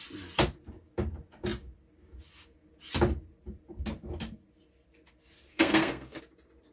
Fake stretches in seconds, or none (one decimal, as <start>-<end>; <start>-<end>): 5.5-6.2